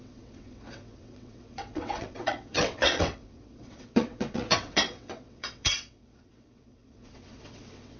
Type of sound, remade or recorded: remade